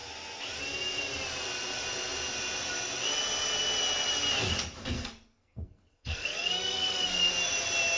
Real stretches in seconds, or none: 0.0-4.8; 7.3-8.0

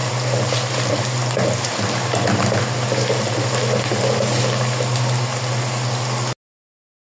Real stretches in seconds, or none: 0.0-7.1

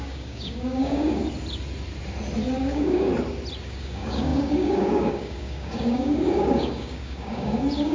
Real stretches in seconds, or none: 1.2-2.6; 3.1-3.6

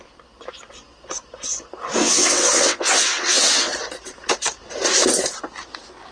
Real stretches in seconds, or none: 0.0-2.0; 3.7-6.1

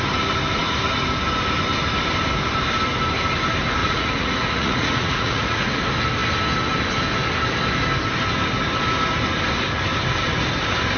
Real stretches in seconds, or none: 0.0-3.8; 5.8-11.0

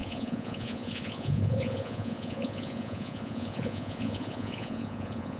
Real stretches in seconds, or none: none